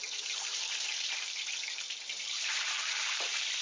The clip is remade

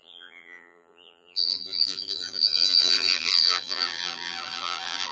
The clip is remade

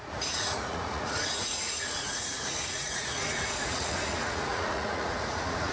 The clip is remade